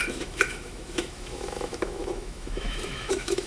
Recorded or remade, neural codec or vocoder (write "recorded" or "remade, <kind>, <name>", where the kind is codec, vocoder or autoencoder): remade, autoencoder, DAC-VAE